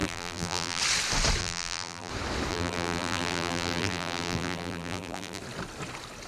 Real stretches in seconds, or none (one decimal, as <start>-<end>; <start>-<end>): 0.8-1.4; 2.1-2.5; 5.4-6.3